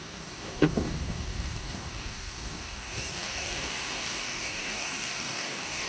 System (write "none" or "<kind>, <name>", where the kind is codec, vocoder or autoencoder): codec, DAC